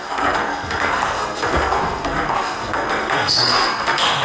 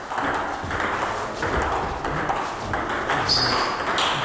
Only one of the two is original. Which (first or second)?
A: second